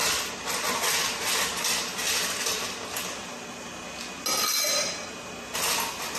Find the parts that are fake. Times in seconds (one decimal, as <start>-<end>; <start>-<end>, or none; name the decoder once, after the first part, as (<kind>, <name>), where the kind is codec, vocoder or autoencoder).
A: none